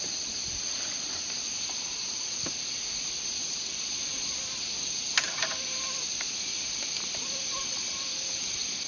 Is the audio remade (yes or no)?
no